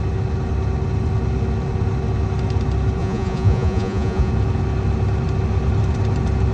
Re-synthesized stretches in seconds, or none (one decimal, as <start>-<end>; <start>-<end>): 3.0-4.3